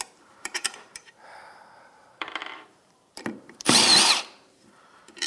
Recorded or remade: remade